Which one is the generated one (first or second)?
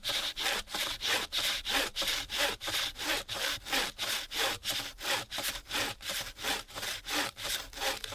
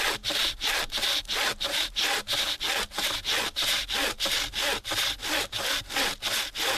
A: first